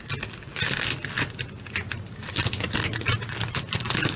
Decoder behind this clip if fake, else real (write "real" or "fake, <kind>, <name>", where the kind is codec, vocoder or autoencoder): real